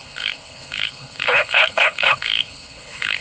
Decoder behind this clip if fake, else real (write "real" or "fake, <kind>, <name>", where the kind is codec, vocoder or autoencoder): fake, codec, HILCodec